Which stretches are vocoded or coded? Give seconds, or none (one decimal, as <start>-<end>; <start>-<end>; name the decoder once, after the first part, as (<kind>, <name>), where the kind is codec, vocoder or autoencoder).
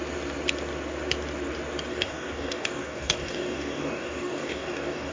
1.9-5.1 (codec, DAC)